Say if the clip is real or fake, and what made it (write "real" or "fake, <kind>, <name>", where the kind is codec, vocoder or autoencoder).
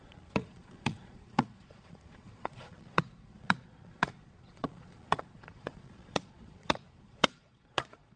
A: fake, vocoder, Vocos